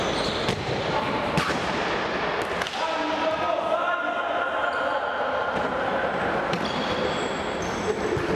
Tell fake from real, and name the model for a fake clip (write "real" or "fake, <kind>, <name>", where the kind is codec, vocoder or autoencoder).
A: real